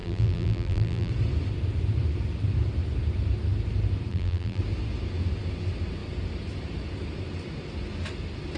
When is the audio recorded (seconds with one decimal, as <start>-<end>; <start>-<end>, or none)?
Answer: 1.1-4.1; 4.6-8.6